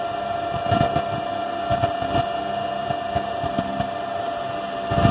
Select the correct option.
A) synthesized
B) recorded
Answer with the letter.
B